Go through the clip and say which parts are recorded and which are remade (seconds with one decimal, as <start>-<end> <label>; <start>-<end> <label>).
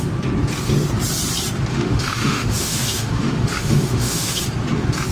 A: 0.0-1.7 recorded; 1.7-4.4 remade; 4.4-5.1 recorded